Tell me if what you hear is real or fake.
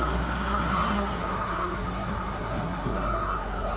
fake